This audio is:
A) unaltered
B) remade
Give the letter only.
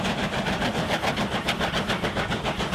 A